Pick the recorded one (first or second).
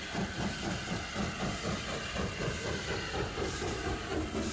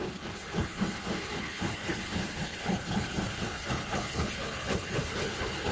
first